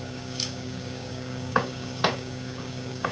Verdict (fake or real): fake